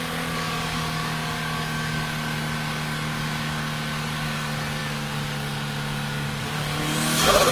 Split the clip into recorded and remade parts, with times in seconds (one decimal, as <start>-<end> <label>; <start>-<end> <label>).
0.0-7.5 remade